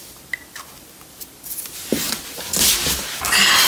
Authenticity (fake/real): real